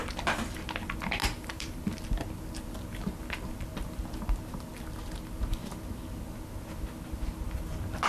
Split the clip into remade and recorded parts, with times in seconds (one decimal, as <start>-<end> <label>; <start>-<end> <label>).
0.0-1.2 recorded; 1.2-1.8 remade; 1.8-8.1 recorded